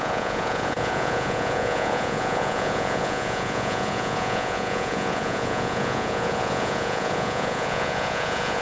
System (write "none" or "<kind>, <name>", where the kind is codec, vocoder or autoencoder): vocoder, Vocos